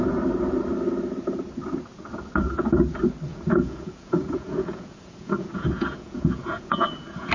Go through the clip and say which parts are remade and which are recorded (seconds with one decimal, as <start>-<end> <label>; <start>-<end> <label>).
0.0-3.3 recorded; 3.3-7.3 remade